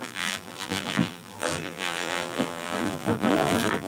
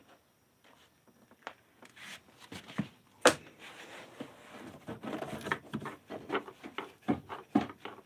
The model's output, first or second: first